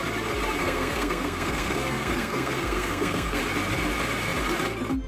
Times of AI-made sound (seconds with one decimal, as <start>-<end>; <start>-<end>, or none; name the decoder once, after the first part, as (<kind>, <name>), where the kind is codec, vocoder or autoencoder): 0.6-3.4 (codec, SNAC)